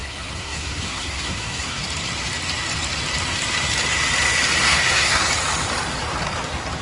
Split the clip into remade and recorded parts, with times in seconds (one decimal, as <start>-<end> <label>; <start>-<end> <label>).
0.0-1.8 remade; 1.8-4.6 recorded; 4.6-5.3 remade; 5.3-6.8 recorded